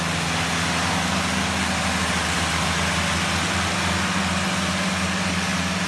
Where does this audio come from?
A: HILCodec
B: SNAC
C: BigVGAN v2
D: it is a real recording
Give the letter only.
D